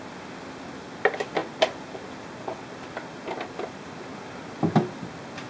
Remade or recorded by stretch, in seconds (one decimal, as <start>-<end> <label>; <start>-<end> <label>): 0.0-5.5 recorded

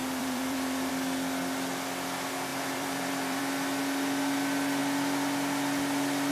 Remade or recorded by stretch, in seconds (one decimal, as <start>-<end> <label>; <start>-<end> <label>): 0.0-0.9 remade; 0.9-2.5 recorded; 2.5-3.4 remade; 3.4-6.3 recorded

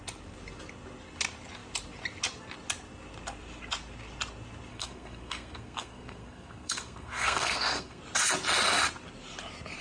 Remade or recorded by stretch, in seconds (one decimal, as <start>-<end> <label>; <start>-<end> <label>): 0.0-4.7 recorded; 4.7-8.0 remade; 8.0-9.8 recorded